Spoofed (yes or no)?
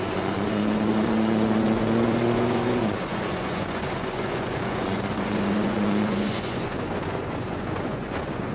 yes